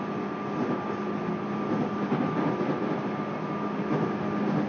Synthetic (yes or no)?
no